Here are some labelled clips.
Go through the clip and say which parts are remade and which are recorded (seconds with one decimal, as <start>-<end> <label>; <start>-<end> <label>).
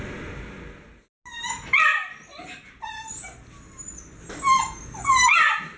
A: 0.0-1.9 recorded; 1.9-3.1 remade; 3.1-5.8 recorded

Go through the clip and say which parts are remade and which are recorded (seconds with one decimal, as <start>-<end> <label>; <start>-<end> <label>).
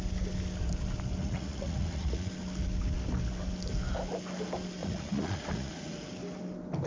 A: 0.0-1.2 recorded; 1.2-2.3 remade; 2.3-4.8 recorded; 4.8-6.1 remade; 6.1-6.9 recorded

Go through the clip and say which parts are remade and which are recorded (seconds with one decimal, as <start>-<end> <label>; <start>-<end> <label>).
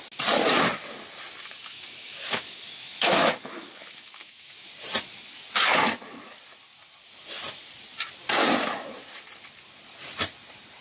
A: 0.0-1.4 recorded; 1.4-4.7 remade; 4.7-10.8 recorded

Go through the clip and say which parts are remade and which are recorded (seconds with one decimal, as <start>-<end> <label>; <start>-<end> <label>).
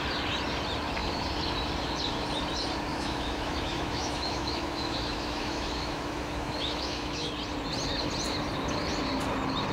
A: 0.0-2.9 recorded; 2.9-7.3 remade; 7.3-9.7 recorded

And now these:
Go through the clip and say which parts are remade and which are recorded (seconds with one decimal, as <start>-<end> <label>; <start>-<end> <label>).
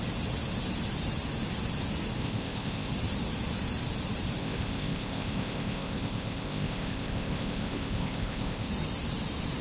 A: 0.0-2.2 recorded; 2.2-2.9 remade; 2.9-4.4 recorded; 4.4-8.7 remade; 8.7-9.6 recorded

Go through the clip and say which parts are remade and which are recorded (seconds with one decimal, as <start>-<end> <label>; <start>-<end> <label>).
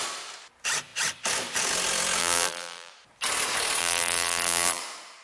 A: 0.0-2.2 recorded; 2.2-2.9 remade; 2.9-3.8 recorded; 3.8-4.8 remade; 4.8-5.2 recorded